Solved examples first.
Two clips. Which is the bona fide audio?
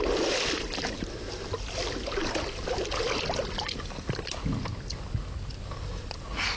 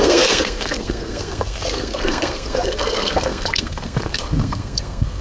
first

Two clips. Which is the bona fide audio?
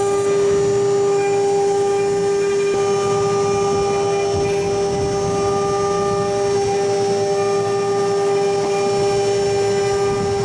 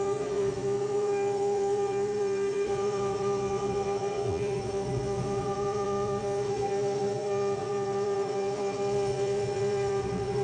first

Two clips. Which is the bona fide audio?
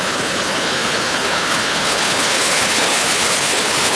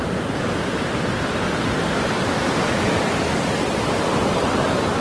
second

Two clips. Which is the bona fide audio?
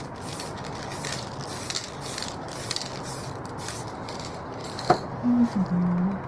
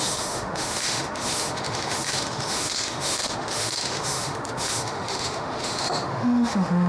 first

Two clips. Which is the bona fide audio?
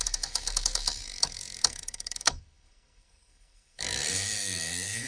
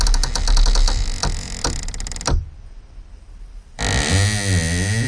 second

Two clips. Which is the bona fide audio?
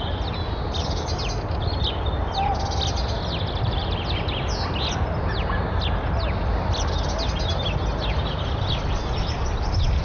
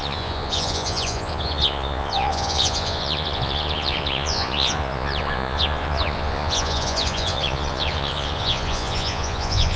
first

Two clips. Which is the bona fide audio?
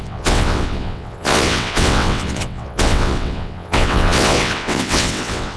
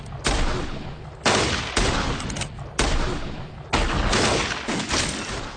second